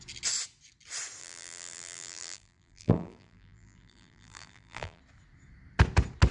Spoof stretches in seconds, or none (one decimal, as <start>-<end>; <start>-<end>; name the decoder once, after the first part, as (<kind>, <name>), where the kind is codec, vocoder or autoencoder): 1.2-5.0 (vocoder, BigVGAN v2)